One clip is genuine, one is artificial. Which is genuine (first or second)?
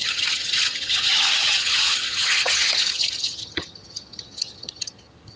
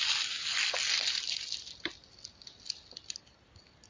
second